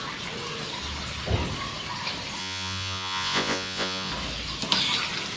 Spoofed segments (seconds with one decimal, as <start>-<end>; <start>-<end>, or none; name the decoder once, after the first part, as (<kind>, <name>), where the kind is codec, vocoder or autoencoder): 2.4-4.1 (vocoder, Vocos)